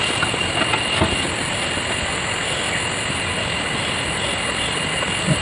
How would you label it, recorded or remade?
recorded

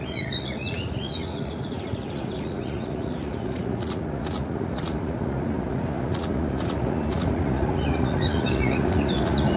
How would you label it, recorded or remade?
remade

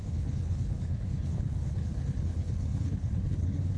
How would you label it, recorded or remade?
remade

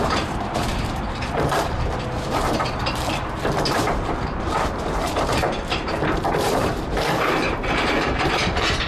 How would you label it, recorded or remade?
remade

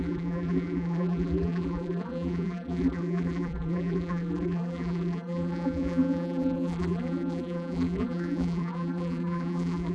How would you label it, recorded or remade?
remade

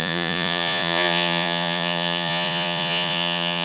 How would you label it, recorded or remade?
remade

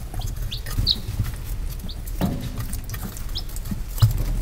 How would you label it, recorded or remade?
recorded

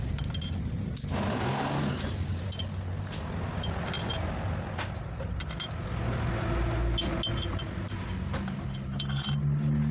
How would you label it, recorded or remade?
recorded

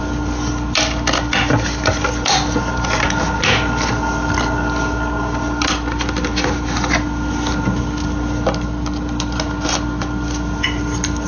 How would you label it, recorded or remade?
recorded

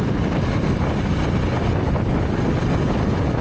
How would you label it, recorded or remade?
recorded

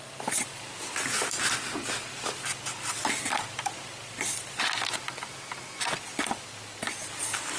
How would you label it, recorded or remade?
recorded